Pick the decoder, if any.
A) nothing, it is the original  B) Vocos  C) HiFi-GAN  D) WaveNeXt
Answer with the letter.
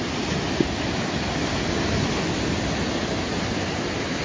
A